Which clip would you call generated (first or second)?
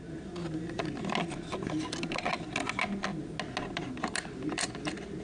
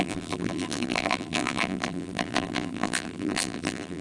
second